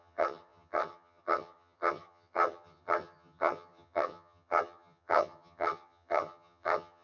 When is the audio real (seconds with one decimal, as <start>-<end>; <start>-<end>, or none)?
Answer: none